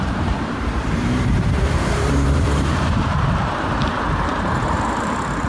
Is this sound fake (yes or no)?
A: yes